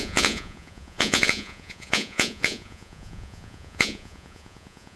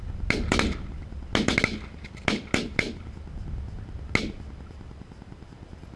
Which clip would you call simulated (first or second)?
first